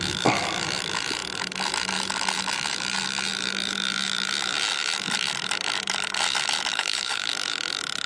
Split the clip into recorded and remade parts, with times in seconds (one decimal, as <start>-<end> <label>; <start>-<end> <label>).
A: 0.0-6.7 recorded; 6.7-7.3 remade; 7.3-8.1 recorded